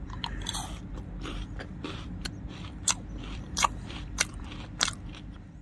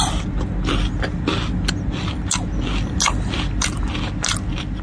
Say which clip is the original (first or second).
second